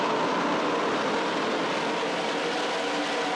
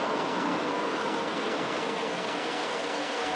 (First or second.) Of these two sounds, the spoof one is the second